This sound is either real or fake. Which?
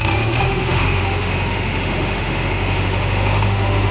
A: fake